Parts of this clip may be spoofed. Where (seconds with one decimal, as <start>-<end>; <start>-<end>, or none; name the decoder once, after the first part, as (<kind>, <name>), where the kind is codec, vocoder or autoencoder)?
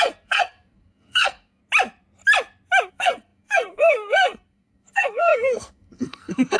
0.0-1.6 (codec, SNAC); 2.9-6.6